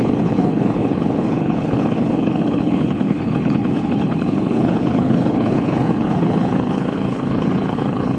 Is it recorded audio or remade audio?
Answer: remade